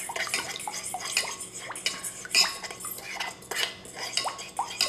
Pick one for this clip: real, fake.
real